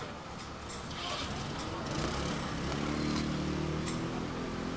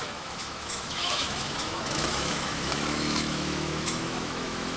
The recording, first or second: first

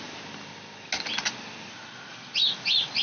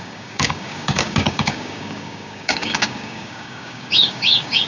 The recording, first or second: first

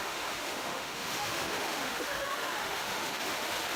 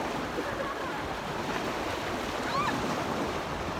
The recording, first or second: second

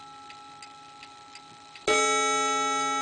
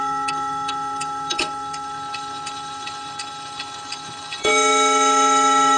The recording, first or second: first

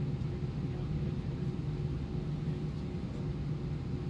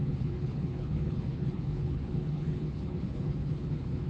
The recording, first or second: first